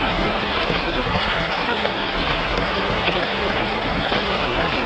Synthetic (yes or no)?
yes